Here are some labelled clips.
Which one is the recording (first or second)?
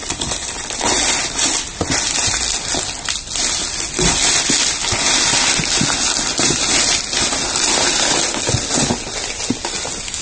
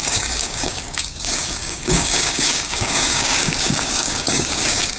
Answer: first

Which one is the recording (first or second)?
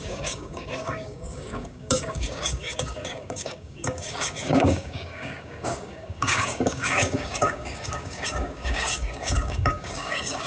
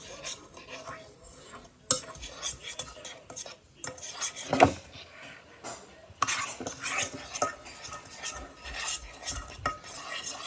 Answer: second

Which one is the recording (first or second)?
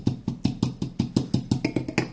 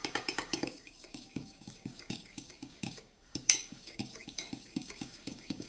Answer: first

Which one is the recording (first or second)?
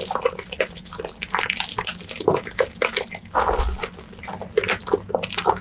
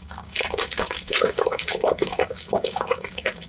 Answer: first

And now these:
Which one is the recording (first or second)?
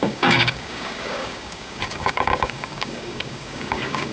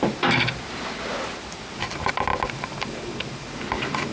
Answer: second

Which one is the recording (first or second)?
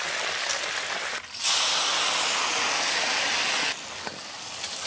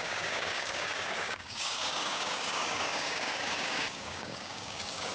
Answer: first